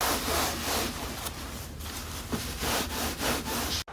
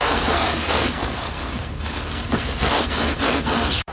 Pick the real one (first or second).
first